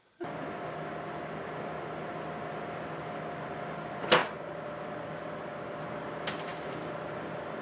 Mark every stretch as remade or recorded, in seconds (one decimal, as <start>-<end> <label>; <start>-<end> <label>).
0.0-7.6 recorded